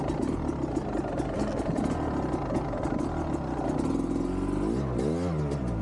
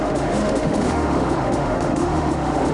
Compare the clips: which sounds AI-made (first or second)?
second